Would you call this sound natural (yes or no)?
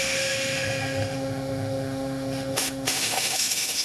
no